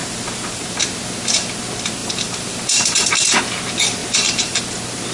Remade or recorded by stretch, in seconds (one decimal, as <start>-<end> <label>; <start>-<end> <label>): 0.0-0.7 remade; 0.7-2.0 recorded; 2.0-3.4 remade; 3.4-4.0 recorded; 4.0-4.6 remade; 4.6-5.1 recorded